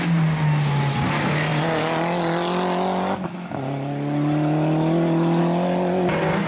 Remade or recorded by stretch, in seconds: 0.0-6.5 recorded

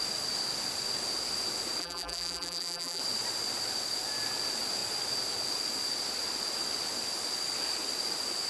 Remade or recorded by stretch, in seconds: 0.0-1.8 recorded; 1.8-3.0 remade; 3.0-8.5 recorded

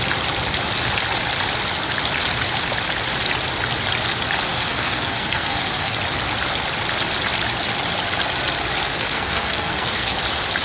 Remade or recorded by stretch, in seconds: 0.0-4.5 recorded; 4.5-5.9 remade; 5.9-8.8 recorded; 8.8-10.2 remade; 10.2-10.6 recorded